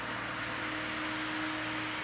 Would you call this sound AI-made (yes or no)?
no